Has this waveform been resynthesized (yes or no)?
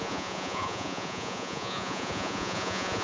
yes